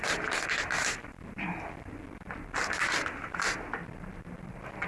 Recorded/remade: recorded